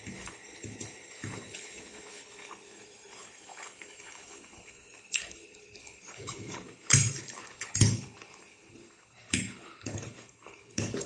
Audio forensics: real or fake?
fake